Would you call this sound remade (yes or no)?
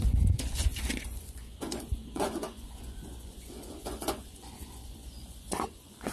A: yes